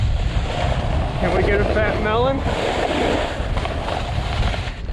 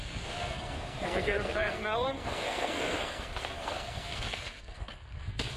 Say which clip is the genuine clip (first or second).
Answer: first